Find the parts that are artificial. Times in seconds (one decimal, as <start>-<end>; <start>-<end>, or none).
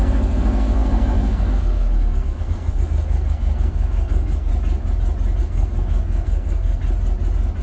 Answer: 0.0-4.5; 5.4-6.8